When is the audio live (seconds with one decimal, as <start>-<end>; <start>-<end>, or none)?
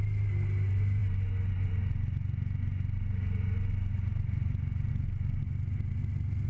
0.0-6.5